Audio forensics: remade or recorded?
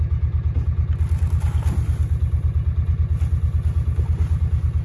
recorded